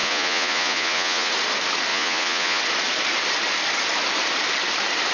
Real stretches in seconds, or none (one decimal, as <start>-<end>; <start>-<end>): 1.3-1.9; 2.6-5.1